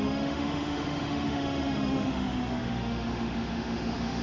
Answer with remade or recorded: remade